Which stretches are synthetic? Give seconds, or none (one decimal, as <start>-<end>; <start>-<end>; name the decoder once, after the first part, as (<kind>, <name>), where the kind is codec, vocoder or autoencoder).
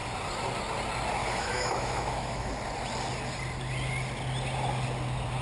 1.2-2.5 (autoencoder, DAC-VAE)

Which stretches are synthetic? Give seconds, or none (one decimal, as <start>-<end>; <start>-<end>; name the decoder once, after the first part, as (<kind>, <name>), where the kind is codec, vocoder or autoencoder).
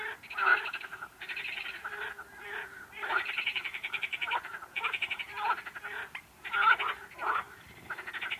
0.5-5.5 (vocoder, BigVGAN v2)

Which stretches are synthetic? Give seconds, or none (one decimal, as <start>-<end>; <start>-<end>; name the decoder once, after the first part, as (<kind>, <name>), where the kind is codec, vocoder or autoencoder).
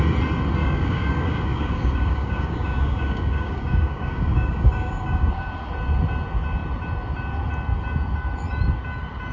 0.6-5.3 (codec, DAC)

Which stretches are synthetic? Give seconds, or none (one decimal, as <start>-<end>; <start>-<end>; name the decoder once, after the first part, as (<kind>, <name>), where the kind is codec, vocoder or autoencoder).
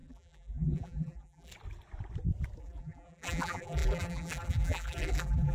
0.0-1.5 (vocoder, BigVGAN v2); 2.6-5.5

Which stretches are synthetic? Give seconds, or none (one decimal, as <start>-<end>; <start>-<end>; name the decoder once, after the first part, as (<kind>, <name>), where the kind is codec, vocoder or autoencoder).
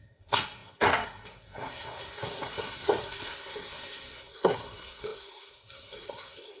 0.0-6.6 (codec, SNAC)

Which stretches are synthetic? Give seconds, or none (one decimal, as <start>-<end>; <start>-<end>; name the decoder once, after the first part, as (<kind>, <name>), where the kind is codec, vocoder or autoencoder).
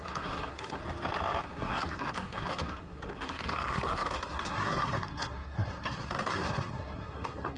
0.0-0.8 (codec, SNAC); 1.4-7.6